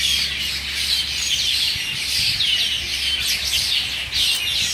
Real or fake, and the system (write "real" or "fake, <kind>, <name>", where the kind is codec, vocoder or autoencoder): real